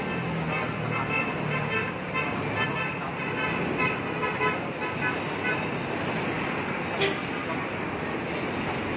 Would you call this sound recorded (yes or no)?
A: yes